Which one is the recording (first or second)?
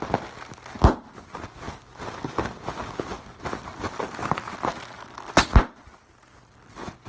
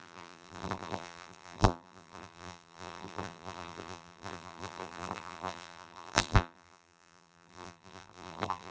first